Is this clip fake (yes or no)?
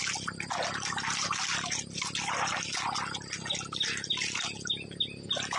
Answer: no